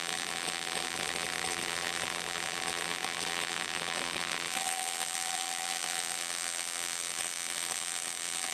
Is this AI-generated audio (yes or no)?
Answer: yes